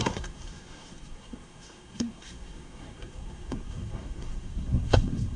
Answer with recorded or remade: remade